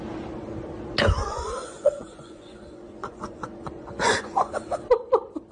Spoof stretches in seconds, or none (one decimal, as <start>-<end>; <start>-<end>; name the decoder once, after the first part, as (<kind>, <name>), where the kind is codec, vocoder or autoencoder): 1.2-4.5 (vocoder, Vocos)